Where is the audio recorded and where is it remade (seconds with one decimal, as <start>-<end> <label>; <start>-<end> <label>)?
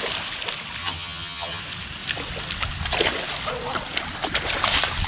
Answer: 0.0-0.8 recorded; 0.8-1.6 remade; 1.6-5.1 recorded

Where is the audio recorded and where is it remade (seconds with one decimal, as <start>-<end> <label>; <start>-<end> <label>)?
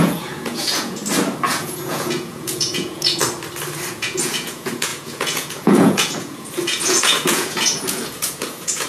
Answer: 0.0-1.0 remade; 1.0-1.5 recorded; 1.5-3.2 remade; 3.2-3.9 recorded; 3.9-8.9 remade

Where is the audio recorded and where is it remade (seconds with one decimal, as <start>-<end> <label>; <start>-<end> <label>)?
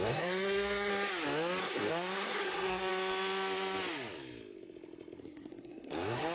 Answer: 0.0-0.9 remade; 0.9-1.6 recorded; 1.6-2.9 remade; 2.9-5.2 recorded; 5.2-6.3 remade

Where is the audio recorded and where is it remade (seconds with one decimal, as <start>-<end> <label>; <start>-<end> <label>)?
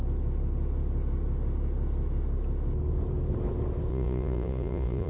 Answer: 0.0-3.9 recorded; 3.9-5.1 remade